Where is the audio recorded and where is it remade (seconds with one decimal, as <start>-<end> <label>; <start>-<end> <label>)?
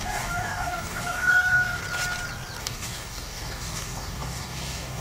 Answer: 0.0-1.8 remade; 1.8-2.6 recorded; 2.6-5.0 remade